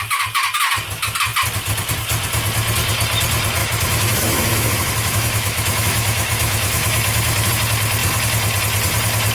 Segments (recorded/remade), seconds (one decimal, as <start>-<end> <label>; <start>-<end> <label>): 0.0-3.6 recorded; 3.6-7.5 remade; 7.5-9.3 recorded